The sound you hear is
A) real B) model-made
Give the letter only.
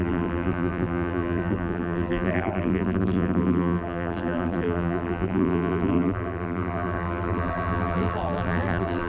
B